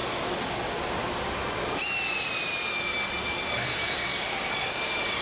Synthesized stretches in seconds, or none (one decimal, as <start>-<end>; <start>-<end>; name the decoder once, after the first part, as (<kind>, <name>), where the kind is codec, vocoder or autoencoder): 3.1-5.2 (vocoder, BigVGAN v2)